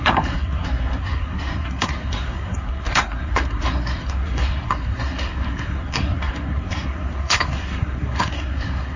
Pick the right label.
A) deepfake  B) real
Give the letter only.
A